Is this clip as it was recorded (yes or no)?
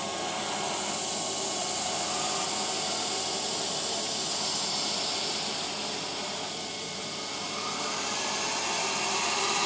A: yes